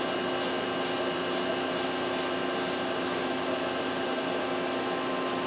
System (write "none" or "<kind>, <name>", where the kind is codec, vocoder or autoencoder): none